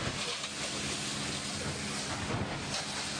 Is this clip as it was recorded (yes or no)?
yes